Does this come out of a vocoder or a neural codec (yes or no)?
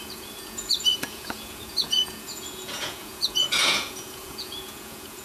yes